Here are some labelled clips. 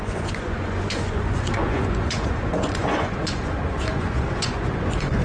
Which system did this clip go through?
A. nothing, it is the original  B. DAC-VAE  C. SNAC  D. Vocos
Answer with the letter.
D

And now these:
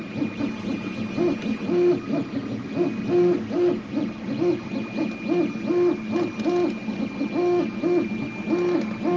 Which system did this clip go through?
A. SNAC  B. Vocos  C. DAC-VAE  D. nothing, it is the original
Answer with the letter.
D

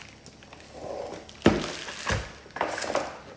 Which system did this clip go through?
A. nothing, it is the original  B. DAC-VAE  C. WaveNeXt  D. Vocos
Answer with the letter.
A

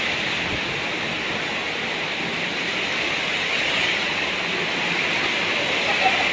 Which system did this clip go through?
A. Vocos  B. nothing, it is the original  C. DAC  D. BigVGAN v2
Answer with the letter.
B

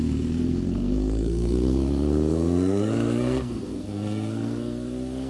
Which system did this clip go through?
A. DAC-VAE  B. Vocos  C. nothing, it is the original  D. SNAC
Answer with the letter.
D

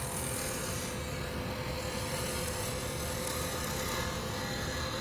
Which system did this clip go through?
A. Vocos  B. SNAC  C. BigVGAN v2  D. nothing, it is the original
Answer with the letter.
D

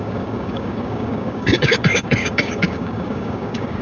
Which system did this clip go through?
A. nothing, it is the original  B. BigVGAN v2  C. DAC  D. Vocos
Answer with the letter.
C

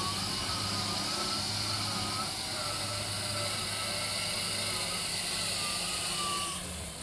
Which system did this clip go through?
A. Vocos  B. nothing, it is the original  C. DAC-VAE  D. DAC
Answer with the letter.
B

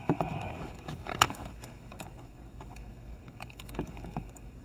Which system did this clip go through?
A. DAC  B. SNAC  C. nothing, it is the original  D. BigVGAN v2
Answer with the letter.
A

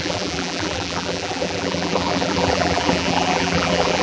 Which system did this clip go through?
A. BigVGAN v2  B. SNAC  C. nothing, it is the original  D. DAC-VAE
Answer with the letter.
A